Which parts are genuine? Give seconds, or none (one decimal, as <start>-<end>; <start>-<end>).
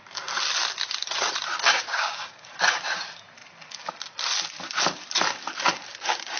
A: 0.0-1.7; 2.5-6.4